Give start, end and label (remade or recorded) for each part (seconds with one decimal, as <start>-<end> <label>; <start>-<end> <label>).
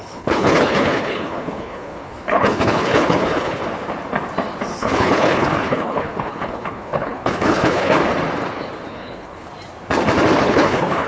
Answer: 0.0-3.6 remade; 3.6-4.8 recorded; 4.8-8.0 remade; 8.0-8.9 recorded; 8.9-9.5 remade; 9.5-10.4 recorded; 10.4-11.1 remade